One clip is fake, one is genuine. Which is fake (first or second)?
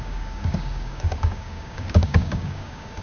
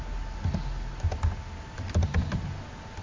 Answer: first